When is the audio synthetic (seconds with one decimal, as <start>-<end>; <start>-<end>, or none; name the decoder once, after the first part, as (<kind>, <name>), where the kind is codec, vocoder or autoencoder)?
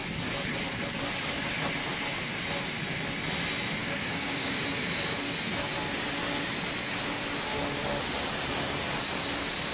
3.8-4.6 (codec, DAC)